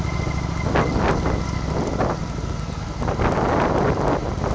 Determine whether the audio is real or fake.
real